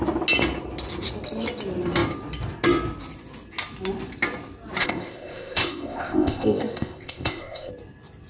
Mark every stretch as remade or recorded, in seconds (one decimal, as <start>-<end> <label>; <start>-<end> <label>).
0.0-4.8 recorded; 4.8-7.7 remade; 7.7-8.3 recorded